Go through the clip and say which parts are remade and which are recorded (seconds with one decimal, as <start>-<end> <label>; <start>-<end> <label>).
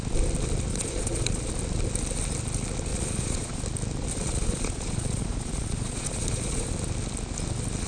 0.0-0.7 recorded; 0.7-1.5 remade; 1.5-2.9 recorded; 2.9-3.6 remade; 3.6-4.1 recorded; 4.1-6.7 remade; 6.7-7.9 recorded